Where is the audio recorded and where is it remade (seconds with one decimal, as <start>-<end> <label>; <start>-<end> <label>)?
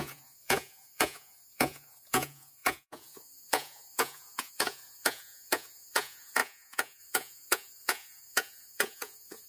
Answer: 0.0-9.5 remade